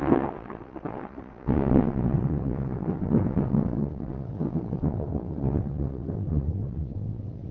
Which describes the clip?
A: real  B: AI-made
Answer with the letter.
B